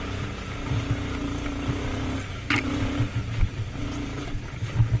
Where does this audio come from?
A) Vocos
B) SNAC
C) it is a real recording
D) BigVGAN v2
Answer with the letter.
C